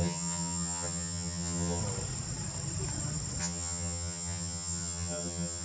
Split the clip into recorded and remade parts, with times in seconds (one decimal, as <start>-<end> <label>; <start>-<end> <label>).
0.0-1.8 remade; 1.8-3.4 recorded; 3.4-5.6 remade